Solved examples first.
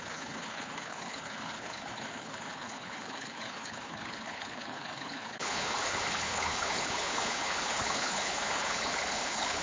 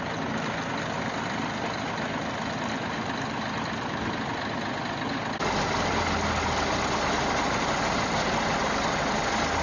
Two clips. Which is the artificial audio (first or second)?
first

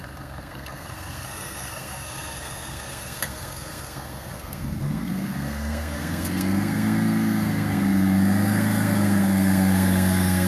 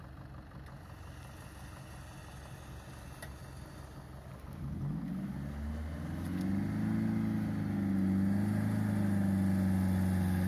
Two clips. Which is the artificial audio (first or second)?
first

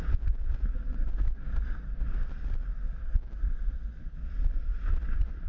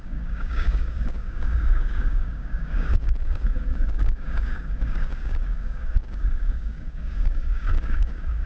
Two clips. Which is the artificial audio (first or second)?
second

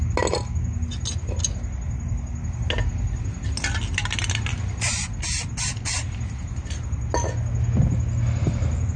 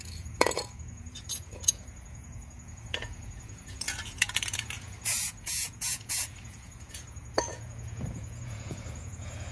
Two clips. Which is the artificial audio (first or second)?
second